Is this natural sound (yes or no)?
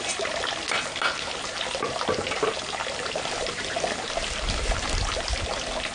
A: yes